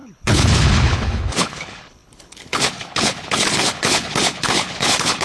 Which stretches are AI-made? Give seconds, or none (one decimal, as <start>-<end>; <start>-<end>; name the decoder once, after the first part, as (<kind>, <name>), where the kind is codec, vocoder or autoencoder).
0.0-5.2 (codec, HILCodec)

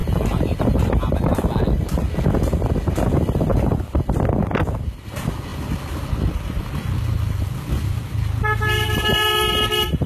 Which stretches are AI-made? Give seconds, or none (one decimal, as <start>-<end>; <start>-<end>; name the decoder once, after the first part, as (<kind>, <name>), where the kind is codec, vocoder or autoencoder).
0.0-1.3 (vocoder, BigVGAN v2)

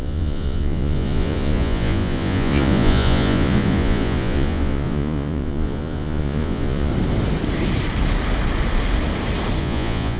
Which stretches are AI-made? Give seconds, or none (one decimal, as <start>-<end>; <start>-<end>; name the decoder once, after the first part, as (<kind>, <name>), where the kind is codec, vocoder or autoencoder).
0.0-6.9 (vocoder, Vocos); 9.6-10.2

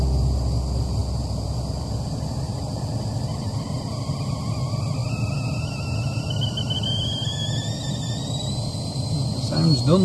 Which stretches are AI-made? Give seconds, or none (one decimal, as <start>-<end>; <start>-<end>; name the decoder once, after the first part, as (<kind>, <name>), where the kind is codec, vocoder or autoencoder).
none

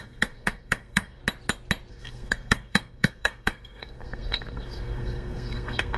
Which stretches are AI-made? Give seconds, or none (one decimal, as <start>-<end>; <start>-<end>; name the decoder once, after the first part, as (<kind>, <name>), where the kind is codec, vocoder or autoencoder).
0.0-1.2 (codec, SNAC); 1.9-6.0

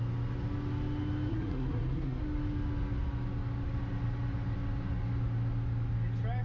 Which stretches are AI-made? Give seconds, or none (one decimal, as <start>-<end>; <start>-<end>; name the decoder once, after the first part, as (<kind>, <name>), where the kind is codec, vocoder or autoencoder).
1.3-2.2 (codec, SNAC)

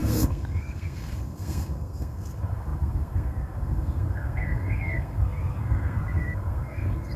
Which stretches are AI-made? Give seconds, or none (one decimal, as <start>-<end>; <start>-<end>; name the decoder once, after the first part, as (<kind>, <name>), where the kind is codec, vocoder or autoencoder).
0.0-7.2 (codec, SNAC)

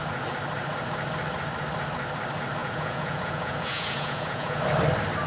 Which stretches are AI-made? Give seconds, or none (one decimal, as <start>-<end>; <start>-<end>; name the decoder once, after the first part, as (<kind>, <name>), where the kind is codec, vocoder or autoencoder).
2.6-4.6 (vocoder, Vocos)